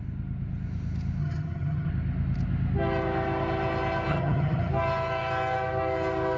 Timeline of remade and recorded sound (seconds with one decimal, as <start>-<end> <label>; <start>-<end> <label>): 0.0-1.2 recorded; 1.2-1.9 remade; 1.9-4.1 recorded; 4.1-4.7 remade; 4.7-6.4 recorded